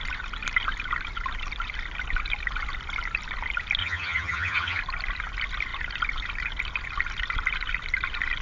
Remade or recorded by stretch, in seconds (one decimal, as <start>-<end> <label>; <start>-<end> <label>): 0.0-3.8 recorded; 3.8-4.8 remade; 4.8-8.4 recorded